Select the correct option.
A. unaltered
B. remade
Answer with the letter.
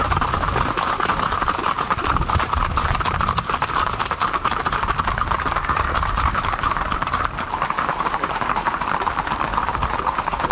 A